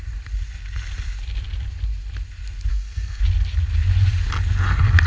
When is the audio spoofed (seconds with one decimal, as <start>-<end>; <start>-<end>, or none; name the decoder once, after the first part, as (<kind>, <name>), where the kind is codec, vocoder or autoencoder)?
2.7-3.2 (codec, SNAC)